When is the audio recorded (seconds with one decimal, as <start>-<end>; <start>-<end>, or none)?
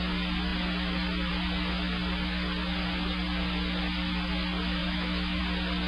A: 0.0-4.8; 5.4-5.9